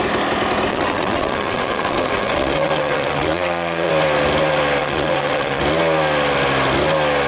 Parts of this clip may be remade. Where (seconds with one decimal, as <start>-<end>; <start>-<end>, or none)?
0.7-3.9; 4.8-5.6